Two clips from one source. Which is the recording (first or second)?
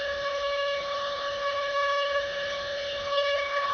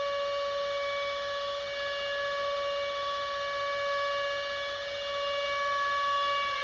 second